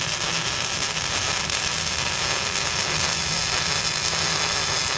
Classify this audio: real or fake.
real